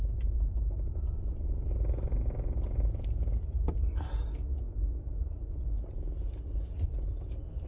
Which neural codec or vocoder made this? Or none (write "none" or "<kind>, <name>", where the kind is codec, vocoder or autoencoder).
none